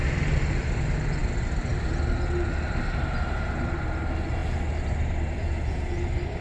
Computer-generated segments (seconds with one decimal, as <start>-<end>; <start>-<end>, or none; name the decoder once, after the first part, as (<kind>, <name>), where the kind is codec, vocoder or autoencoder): none